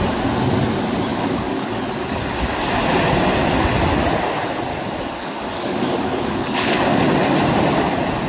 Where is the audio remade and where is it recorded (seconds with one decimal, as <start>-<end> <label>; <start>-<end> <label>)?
0.0-1.1 recorded; 1.1-1.8 remade; 1.8-4.7 recorded; 4.7-7.0 remade; 7.0-8.3 recorded